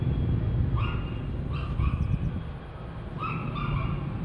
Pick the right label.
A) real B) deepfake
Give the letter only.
A